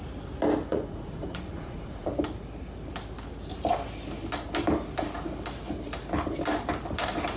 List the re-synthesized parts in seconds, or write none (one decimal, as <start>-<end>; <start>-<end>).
0.7-2.2